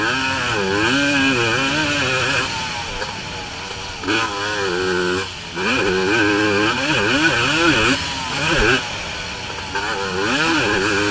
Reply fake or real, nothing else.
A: real